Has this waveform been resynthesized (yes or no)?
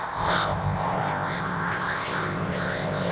yes